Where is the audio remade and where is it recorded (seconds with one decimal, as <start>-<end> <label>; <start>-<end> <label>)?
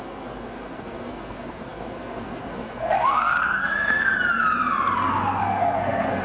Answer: 0.0-4.1 remade; 4.1-5.4 recorded; 5.4-6.2 remade